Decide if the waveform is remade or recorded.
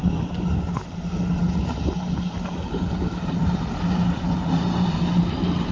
recorded